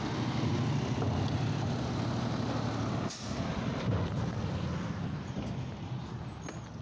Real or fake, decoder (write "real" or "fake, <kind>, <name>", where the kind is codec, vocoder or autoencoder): real